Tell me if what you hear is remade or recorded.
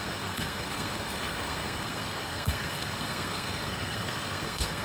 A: remade